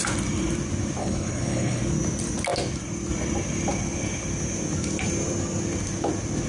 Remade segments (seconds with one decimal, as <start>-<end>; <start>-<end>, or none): 1.0-1.8